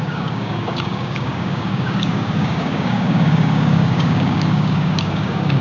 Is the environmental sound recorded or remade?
remade